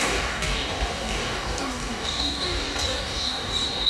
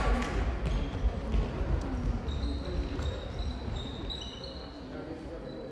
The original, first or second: second